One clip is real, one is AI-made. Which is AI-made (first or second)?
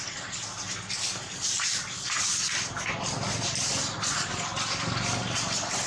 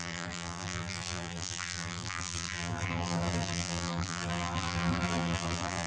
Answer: second